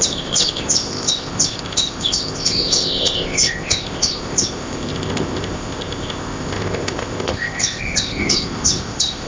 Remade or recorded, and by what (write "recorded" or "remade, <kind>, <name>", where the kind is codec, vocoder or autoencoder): remade, codec, ZipCodec